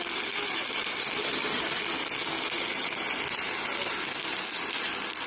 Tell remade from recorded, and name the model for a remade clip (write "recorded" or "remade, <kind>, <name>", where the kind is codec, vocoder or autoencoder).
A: recorded